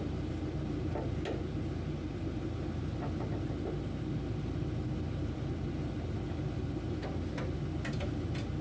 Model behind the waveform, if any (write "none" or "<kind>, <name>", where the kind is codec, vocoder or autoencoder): none